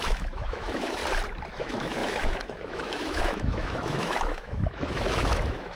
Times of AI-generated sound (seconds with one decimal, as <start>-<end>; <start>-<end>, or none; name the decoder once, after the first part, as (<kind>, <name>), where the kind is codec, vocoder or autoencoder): 0.0-1.0 (autoencoder, DAC-VAE); 1.5-5.8